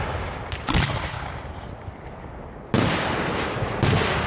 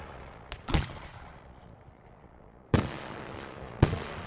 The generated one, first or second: second